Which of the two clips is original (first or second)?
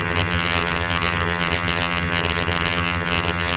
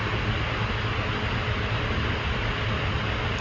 second